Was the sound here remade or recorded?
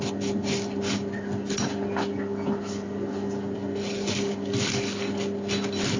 recorded